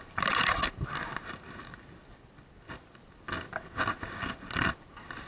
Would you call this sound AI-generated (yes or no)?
yes